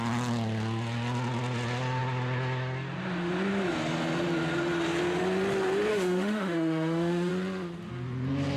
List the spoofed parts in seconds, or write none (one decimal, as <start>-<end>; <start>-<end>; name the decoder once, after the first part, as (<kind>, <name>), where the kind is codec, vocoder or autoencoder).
5.9-7.3 (autoencoder, DAC-VAE)